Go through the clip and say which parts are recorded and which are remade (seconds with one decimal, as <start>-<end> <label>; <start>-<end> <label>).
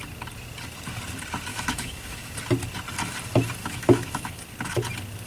0.0-1.5 recorded; 1.5-2.3 remade; 2.3-3.6 recorded; 3.6-4.4 remade; 4.4-5.3 recorded